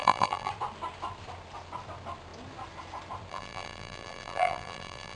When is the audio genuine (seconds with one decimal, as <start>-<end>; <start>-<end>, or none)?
0.5-3.3